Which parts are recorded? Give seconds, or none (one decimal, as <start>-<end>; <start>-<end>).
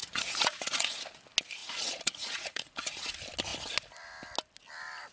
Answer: 1.0-1.6; 3.1-5.1